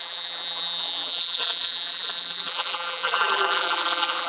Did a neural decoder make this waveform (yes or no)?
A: yes